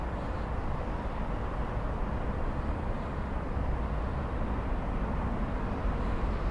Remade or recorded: remade